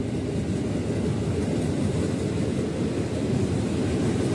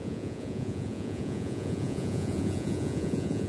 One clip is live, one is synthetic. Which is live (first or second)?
first